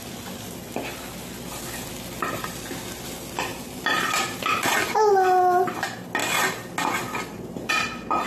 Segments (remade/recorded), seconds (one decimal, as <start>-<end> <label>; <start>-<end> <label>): 0.0-8.3 recorded

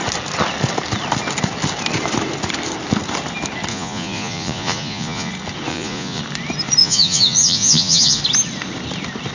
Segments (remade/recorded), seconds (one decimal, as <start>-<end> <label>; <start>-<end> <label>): 0.0-3.7 recorded; 3.7-5.3 remade; 5.3-5.7 recorded; 5.7-6.2 remade; 6.2-6.8 recorded; 6.8-8.2 remade; 8.2-9.3 recorded

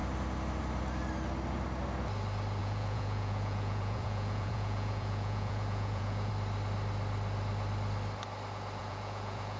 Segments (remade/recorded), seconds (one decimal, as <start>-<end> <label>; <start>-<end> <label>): 0.0-2.6 recorded; 2.6-6.3 remade; 6.3-8.8 recorded; 8.8-9.6 remade

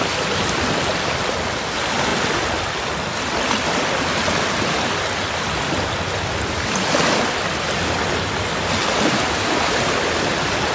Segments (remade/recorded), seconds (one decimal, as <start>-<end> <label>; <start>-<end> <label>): 0.0-10.7 recorded

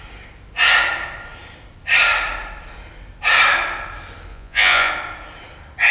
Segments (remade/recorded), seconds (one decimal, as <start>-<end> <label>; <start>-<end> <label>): 0.0-4.3 recorded; 4.3-4.9 remade; 4.9-5.9 recorded

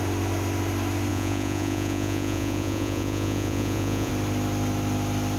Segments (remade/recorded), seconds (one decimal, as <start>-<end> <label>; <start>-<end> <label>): 0.0-1.1 recorded; 1.1-4.1 remade; 4.1-5.4 recorded

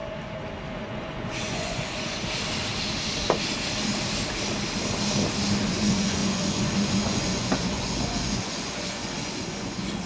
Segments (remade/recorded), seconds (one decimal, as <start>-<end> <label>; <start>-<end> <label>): 0.0-0.7 recorded; 0.7-2.2 remade; 2.2-5.6 recorded; 5.6-10.1 remade

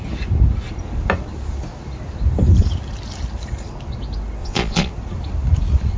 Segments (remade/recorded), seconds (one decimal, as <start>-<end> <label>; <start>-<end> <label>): 0.0-4.4 recorded; 4.4-4.9 remade; 4.9-6.0 recorded